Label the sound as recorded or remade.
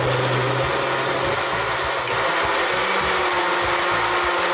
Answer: recorded